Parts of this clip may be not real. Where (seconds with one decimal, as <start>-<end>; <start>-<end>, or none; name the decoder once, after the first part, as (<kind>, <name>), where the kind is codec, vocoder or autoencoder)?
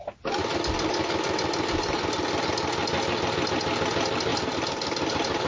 none